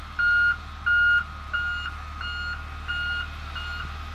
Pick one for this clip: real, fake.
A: real